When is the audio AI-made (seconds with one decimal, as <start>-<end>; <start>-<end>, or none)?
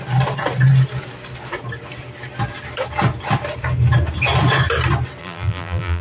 5.2-6.0